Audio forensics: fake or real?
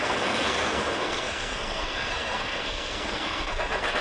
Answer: fake